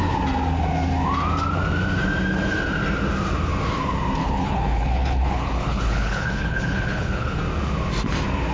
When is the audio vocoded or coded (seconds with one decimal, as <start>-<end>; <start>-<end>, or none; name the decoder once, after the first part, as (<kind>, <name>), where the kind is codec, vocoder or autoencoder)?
4.2-7.4 (codec, HILCodec)